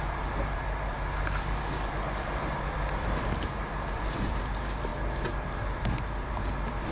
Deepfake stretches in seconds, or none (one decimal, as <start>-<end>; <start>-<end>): none